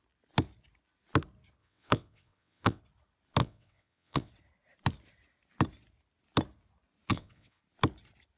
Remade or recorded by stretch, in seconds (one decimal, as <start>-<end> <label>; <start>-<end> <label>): 0.0-1.6 recorded; 1.6-2.8 remade; 2.8-3.4 recorded; 3.4-4.3 remade; 4.3-7.1 recorded; 7.1-7.6 remade; 7.6-8.4 recorded